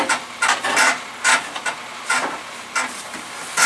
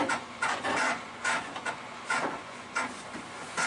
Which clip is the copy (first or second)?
second